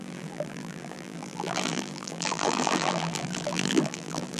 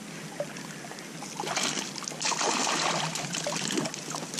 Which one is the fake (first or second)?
first